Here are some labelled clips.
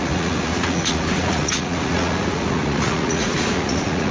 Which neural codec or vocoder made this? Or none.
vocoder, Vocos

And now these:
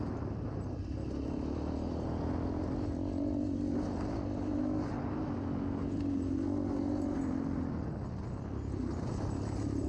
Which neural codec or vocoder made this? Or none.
none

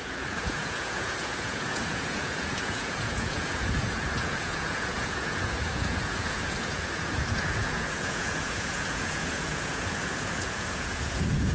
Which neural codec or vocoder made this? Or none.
vocoder, Vocos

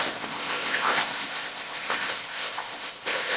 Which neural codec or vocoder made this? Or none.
codec, ZipCodec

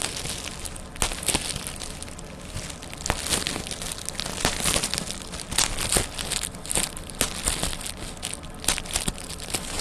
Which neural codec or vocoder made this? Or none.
none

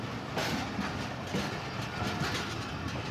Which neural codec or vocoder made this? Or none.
none